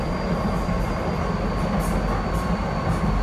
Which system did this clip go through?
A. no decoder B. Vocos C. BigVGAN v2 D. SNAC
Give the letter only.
A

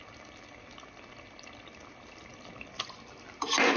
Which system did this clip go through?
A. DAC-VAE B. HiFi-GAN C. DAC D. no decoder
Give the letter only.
D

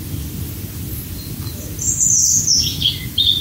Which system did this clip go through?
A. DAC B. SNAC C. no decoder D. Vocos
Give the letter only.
C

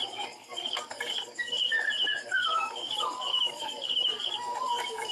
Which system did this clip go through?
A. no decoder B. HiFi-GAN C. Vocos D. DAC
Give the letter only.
D